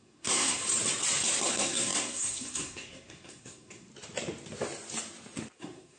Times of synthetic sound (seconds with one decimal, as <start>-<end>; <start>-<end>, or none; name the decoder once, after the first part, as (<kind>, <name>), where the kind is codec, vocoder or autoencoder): 0.0-0.6 (codec, SNAC); 1.5-3.9; 5.6-6.0